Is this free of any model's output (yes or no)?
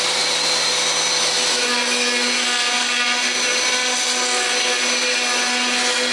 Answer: yes